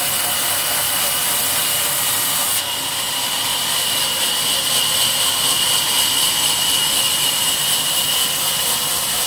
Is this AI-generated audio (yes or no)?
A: no